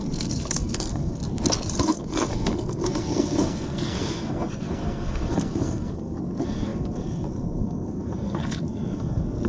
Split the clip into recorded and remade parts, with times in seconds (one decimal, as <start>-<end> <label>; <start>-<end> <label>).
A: 0.0-1.2 remade; 1.2-1.8 recorded; 1.8-9.5 remade